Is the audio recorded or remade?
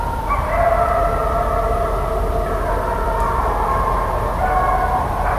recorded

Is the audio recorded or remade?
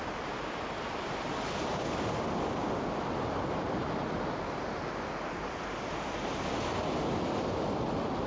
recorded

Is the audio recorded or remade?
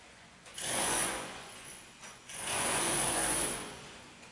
remade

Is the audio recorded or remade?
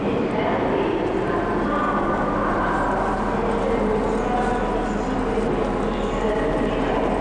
recorded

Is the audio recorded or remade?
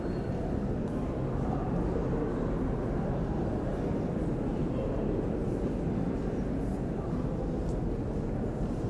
recorded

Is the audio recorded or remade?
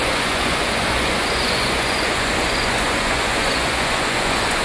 remade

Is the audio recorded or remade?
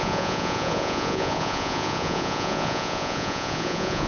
remade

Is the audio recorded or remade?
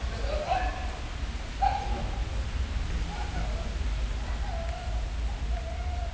recorded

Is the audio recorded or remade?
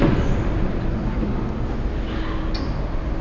recorded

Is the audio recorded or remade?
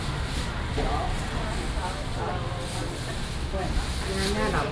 recorded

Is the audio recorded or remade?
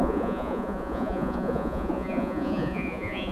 remade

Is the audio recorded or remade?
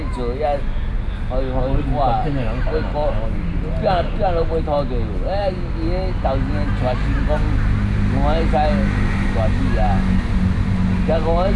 recorded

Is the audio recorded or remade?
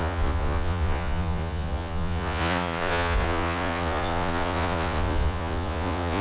remade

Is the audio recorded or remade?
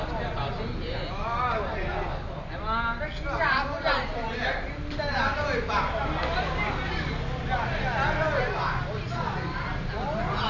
recorded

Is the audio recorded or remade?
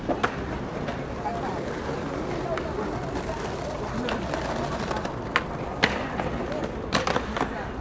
recorded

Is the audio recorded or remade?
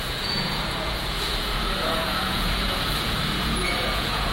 remade